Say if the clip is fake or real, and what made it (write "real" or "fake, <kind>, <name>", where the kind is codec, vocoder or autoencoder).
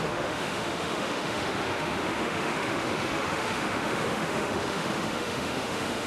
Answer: fake, autoencoder, DAC-VAE